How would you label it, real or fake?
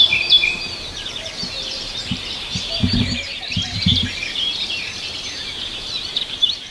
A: fake